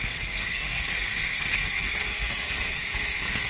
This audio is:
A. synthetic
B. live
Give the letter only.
A